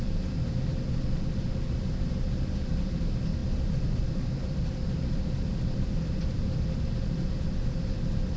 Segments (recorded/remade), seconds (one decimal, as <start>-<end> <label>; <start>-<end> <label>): 0.0-8.4 recorded